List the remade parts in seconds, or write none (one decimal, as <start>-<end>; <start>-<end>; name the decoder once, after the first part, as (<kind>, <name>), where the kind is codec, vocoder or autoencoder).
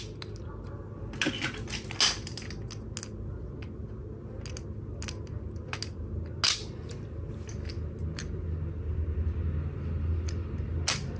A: none